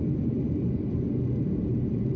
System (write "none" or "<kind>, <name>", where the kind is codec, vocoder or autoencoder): vocoder, BigVGAN v2